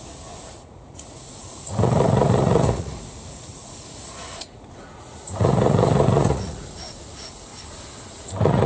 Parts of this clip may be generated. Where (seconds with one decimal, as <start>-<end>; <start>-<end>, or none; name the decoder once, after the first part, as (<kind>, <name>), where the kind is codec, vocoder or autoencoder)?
0.0-7.5 (vocoder, Vocos); 8.0-8.7